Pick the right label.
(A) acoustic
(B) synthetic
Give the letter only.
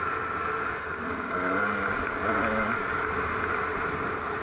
A